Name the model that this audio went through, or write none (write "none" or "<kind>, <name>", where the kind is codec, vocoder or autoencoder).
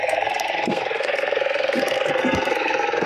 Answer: codec, SNAC